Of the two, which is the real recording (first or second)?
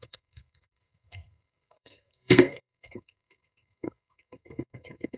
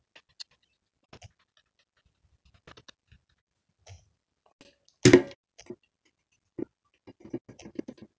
second